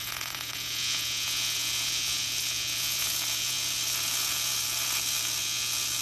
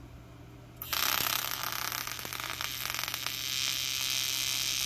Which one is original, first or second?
second